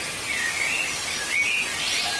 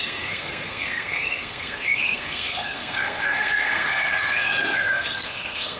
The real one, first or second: first